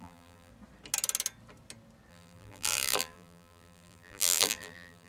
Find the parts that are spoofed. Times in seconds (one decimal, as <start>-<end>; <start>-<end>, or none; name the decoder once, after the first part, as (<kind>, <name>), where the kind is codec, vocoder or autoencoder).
0.0-0.5 (vocoder, BigVGAN v2); 2.1-5.1